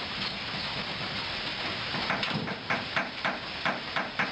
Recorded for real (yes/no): yes